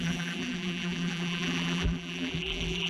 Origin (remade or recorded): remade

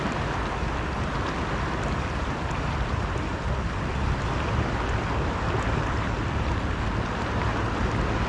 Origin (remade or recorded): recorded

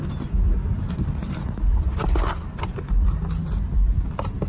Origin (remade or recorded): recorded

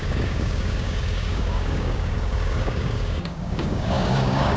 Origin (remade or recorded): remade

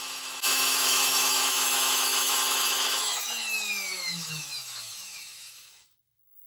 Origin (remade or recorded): remade